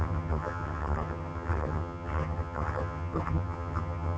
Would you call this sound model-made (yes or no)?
yes